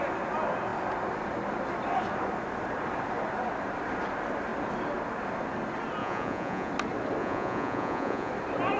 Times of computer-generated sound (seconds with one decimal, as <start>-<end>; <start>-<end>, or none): 6.0-6.7; 7.2-8.3